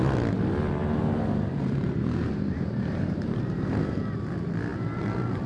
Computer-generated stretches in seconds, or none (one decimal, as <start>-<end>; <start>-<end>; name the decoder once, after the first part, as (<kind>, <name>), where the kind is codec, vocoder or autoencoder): 0.8-4.1 (vocoder, BigVGAN v2)